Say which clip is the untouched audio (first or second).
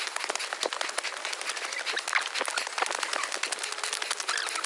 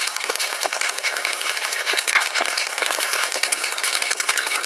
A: first